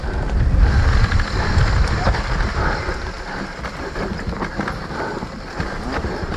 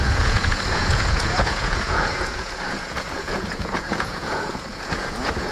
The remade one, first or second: second